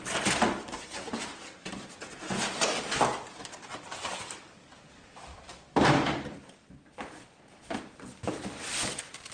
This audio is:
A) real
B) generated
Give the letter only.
B